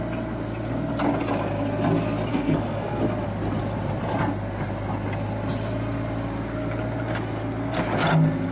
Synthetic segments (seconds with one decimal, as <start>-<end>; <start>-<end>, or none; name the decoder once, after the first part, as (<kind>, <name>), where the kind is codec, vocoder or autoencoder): 2.3-3.0 (codec, SNAC)